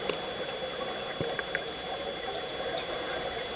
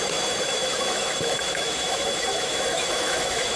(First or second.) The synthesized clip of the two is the second